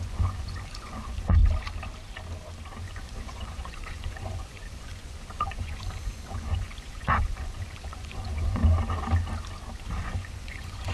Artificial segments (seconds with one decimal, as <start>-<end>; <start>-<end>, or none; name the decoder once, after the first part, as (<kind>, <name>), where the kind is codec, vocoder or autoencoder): 0.0-1.4 (vocoder, Vocos); 2.8-8.6; 10.0-10.9